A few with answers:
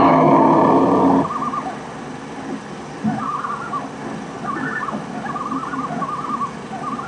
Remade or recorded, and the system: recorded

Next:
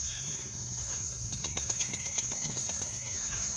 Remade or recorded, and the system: remade, codec, SNAC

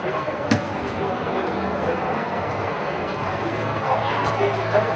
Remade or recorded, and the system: remade, codec, SNAC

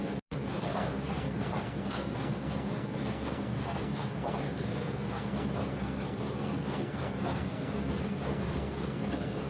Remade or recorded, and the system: remade, codec, SNAC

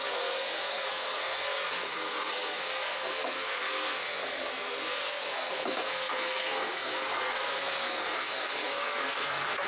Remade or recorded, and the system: remade, codec, SNAC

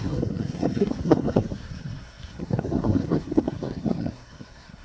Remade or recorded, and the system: remade, codec, SNAC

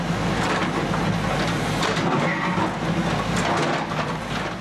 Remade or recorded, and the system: recorded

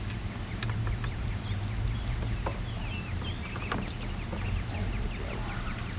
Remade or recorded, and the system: recorded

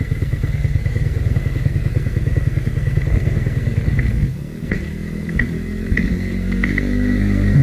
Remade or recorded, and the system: remade, codec, SNAC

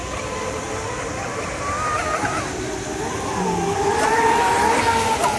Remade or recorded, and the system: recorded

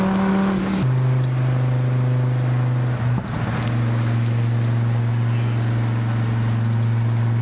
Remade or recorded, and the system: recorded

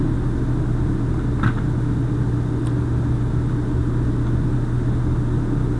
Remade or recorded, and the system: recorded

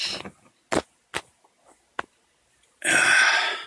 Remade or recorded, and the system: recorded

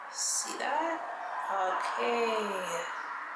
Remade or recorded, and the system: recorded